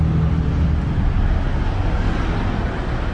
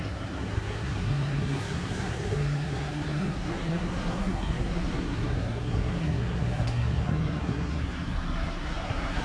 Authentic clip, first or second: first